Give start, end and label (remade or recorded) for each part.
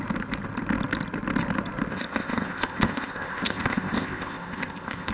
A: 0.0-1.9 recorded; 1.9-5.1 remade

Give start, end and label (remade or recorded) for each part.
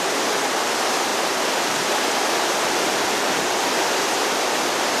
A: 0.0-1.1 recorded; 1.1-4.1 remade; 4.1-5.0 recorded